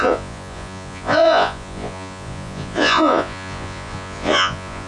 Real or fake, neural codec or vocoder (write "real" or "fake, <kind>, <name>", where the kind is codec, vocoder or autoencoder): fake, vocoder, Vocos